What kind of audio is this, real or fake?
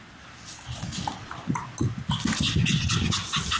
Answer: real